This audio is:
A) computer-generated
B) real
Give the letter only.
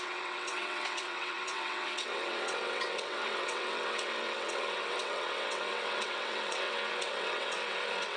A